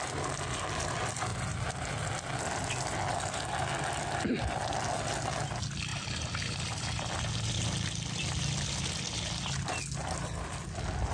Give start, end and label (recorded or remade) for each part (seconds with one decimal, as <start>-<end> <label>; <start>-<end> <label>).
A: 0.0-11.1 recorded